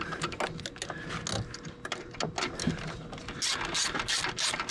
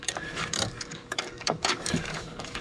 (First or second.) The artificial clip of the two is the second